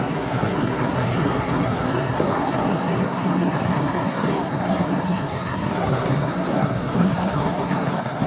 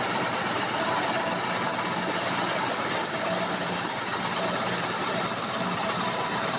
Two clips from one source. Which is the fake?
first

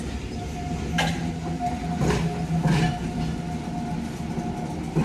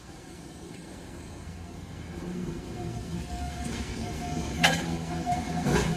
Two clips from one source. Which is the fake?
second